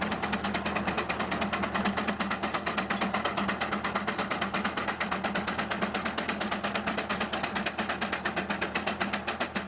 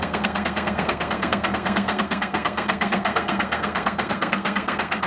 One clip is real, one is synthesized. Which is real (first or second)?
first